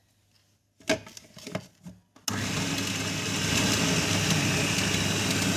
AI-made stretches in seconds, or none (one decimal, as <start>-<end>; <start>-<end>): none